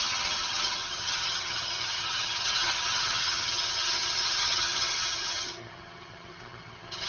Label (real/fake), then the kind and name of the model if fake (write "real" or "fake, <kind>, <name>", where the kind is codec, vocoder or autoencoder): fake, vocoder, HiFi-GAN